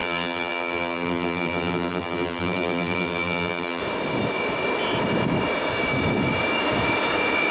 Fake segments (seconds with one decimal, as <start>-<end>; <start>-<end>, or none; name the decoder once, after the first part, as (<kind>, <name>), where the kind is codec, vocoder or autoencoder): 0.0-3.8 (vocoder, BigVGAN v2)